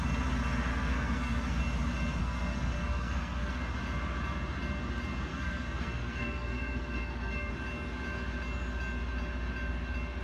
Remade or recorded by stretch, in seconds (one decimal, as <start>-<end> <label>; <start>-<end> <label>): 0.0-0.7 recorded; 0.7-1.6 remade; 1.6-2.2 recorded; 2.2-3.6 remade; 3.6-5.3 recorded; 5.3-7.5 remade; 7.5-10.2 recorded